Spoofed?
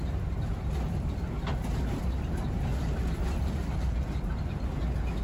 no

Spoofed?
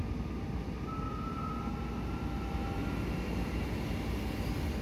no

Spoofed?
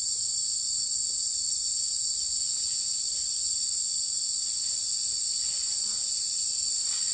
no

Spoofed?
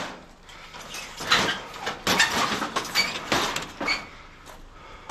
no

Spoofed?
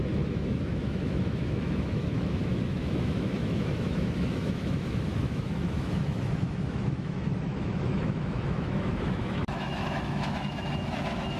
yes